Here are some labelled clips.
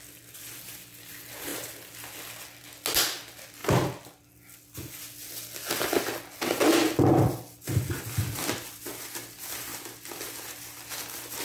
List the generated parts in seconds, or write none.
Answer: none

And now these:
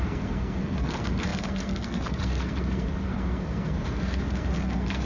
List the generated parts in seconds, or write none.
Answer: 0.0-5.1 (codec, SNAC)

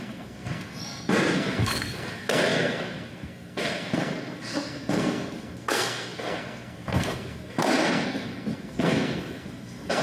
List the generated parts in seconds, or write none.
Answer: 0.0-10.0 (codec, SNAC)

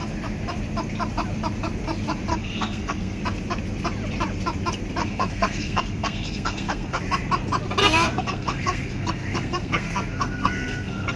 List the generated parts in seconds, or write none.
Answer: 2.3-3.2 (codec, SNAC); 5.0-7.0; 7.8-11.2

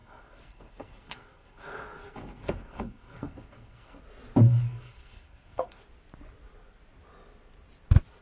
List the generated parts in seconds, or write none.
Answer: 0.0-4.0 (codec, SNAC); 4.4-5.8

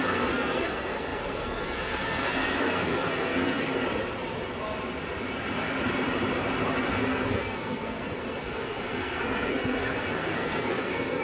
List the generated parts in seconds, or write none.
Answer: 0.0-3.8 (codec, SNAC); 6.9-11.2